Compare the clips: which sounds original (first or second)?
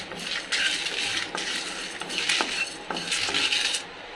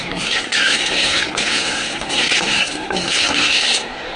first